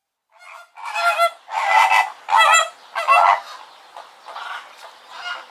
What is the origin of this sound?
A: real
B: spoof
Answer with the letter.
A